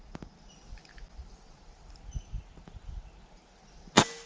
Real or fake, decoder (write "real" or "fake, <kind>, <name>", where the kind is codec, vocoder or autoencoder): real